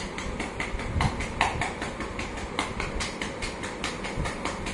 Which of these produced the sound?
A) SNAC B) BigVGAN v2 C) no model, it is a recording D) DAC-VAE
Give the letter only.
C